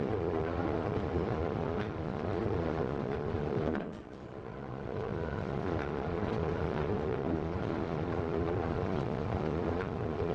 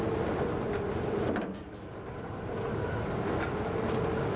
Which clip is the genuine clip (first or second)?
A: second